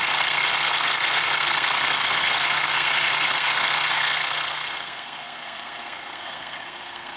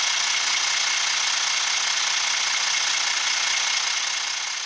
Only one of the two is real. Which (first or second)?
second